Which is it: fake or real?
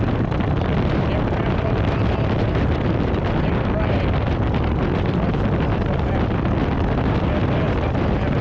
real